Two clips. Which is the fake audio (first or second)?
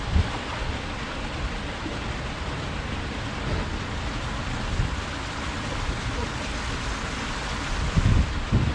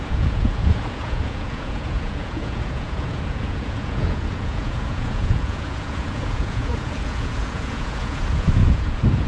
second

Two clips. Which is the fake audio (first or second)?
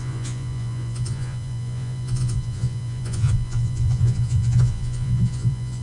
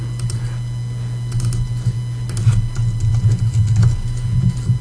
first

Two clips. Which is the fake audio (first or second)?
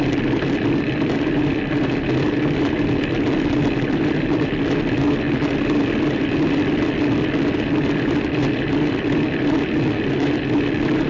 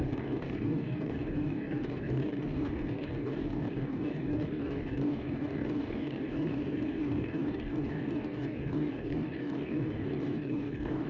second